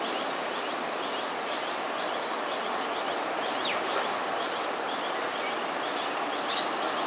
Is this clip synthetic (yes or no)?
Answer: no